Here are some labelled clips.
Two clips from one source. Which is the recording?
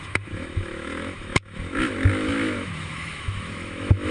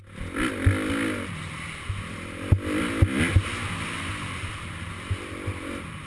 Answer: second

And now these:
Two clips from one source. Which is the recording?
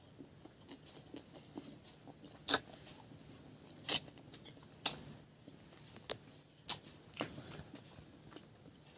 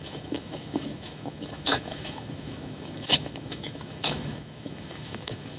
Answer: first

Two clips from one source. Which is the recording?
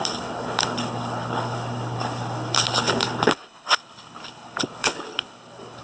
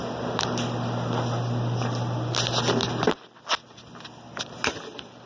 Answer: second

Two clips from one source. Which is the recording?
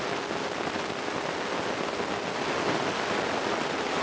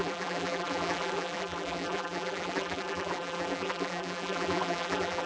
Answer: first